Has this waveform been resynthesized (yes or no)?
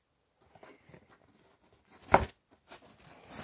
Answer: no